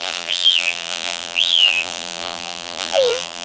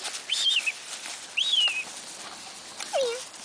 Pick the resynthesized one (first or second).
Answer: first